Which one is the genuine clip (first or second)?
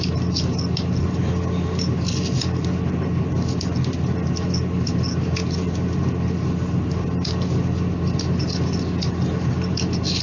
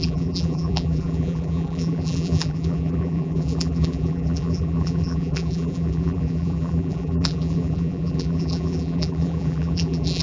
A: first